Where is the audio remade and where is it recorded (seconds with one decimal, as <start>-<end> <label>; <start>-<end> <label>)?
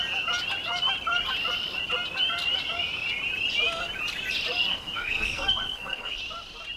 0.0-4.7 recorded; 4.7-6.2 remade; 6.2-6.8 recorded